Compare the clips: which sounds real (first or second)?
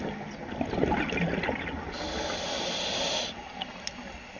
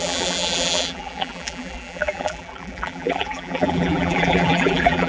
first